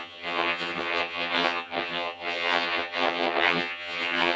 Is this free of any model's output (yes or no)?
no